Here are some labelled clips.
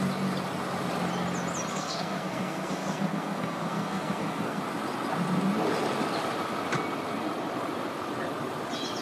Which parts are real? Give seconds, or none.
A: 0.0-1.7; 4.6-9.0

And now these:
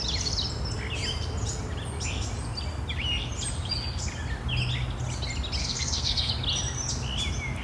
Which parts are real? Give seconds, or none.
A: 0.0-5.6; 6.3-7.6

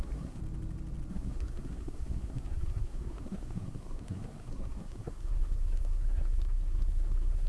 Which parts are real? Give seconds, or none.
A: 0.4-1.1

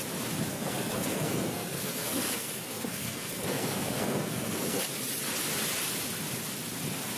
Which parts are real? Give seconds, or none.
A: 0.0-0.5; 4.8-7.2

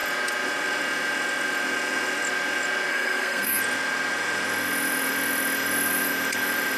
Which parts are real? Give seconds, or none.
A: 0.0-2.9; 3.6-6.8

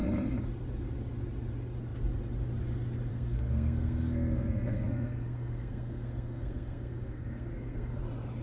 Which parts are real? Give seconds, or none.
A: 0.0-3.1; 8.0-8.4